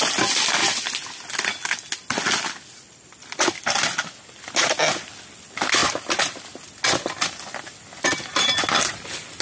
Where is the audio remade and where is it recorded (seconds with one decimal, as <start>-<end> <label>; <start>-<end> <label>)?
0.0-9.4 recorded